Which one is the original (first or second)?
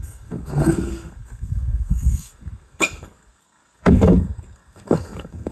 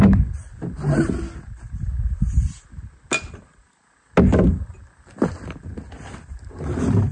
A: second